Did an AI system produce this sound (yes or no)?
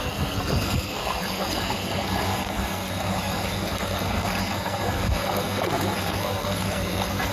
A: yes